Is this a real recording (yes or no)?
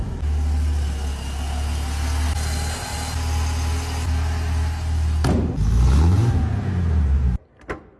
yes